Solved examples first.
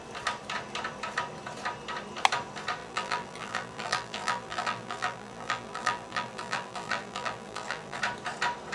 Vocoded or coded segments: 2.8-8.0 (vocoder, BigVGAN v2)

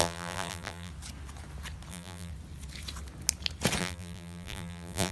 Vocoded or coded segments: 0.0-0.9 (vocoder, BigVGAN v2); 1.9-2.3; 3.8-5.1

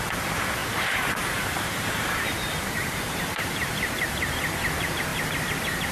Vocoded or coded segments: 0.0-5.1 (vocoder, BigVGAN v2)